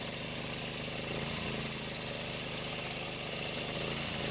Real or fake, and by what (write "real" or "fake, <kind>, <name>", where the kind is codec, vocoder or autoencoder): real